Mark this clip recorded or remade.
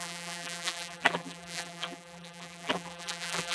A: remade